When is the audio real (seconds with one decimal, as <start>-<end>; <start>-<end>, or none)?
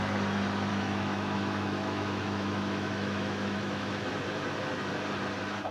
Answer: 0.0-0.7; 4.1-5.7